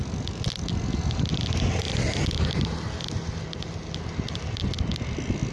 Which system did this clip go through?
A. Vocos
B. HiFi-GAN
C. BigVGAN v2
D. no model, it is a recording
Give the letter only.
D